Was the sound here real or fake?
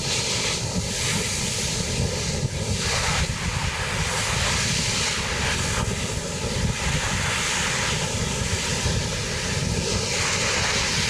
real